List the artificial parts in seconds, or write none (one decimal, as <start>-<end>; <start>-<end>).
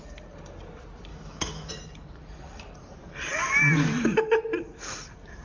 1.1-1.7